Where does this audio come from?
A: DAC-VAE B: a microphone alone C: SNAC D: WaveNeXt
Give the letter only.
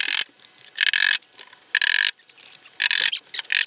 B